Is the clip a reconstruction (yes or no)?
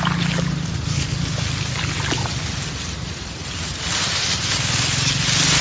no